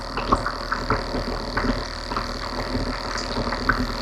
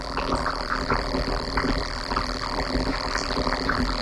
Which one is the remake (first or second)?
second